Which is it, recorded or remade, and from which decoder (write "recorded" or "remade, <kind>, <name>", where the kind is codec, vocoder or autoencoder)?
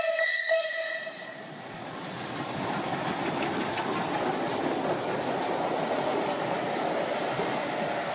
recorded